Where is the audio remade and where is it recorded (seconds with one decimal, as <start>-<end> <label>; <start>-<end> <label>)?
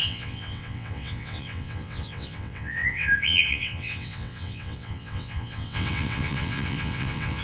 0.0-7.4 remade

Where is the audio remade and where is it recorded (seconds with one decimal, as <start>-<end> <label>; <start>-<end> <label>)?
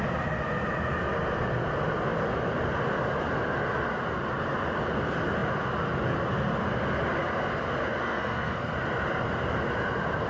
0.0-8.0 recorded; 8.0-8.7 remade; 8.7-10.3 recorded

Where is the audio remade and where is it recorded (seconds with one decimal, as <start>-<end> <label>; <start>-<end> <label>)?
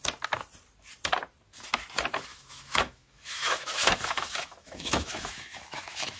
0.0-2.3 recorded; 2.3-6.2 remade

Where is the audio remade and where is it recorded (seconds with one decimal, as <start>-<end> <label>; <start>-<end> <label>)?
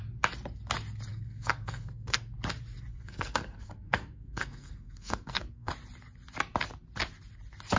0.0-1.1 recorded; 1.1-2.3 remade; 2.3-2.9 recorded; 2.9-5.7 remade; 5.7-7.8 recorded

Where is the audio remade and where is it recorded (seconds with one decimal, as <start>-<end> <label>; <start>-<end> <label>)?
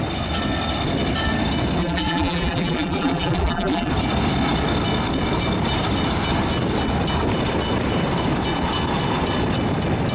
0.0-1.8 recorded; 1.8-3.9 remade; 3.9-10.1 recorded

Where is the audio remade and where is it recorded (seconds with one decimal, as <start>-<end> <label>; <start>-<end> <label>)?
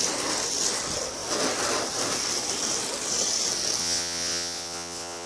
0.0-3.8 recorded; 3.8-5.3 remade